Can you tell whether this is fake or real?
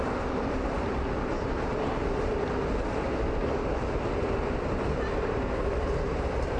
real